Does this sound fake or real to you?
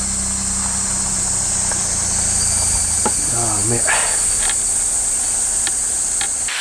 real